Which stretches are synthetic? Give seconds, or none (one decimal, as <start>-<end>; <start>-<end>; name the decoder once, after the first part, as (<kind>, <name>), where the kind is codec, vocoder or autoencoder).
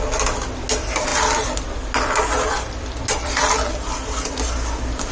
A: none